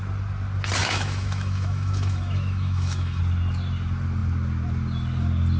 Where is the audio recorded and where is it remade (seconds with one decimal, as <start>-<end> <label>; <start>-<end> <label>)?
0.0-0.8 recorded; 0.8-3.2 remade; 3.2-5.6 recorded